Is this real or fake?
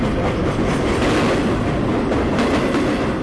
real